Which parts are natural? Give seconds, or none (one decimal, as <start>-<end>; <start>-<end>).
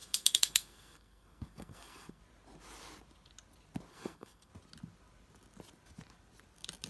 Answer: 2.2-3.9; 4.5-6.9